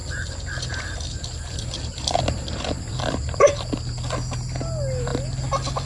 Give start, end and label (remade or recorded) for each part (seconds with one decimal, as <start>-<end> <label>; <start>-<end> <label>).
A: 0.0-3.5 remade; 3.5-5.9 recorded